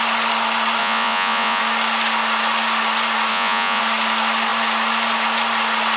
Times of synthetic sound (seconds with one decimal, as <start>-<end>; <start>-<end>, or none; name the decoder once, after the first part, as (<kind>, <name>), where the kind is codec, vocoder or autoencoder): 0.8-1.6 (vocoder, Vocos); 3.3-3.8